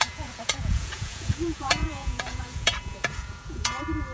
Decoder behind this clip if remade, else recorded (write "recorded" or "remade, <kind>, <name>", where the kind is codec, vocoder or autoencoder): remade, vocoder, Vocos